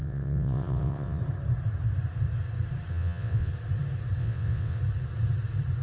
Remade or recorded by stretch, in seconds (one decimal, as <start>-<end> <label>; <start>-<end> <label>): 0.0-1.2 remade; 1.2-2.9 recorded; 2.9-3.5 remade; 3.5-4.2 recorded; 4.2-4.8 remade; 4.8-5.8 recorded